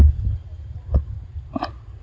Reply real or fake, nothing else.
real